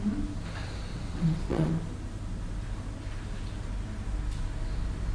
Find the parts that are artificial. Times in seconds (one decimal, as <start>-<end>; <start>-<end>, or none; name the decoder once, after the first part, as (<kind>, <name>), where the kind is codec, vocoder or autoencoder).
0.9-1.7 (vocoder, WaveNeXt)